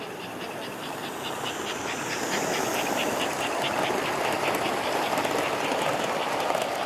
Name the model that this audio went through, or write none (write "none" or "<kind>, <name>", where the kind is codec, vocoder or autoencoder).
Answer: none